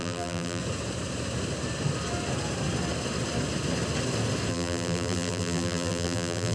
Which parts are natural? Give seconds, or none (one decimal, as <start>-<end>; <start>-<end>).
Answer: 0.6-4.5